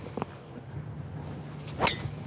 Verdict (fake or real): real